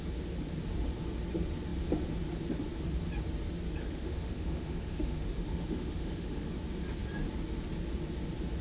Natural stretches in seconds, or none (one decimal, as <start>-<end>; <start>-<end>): 0.0-3.8; 6.5-8.6